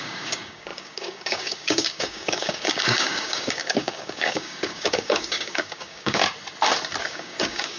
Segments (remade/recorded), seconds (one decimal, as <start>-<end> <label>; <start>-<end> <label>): 0.0-6.2 remade; 6.2-7.0 recorded; 7.0-7.8 remade